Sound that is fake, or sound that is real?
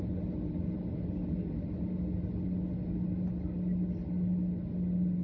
real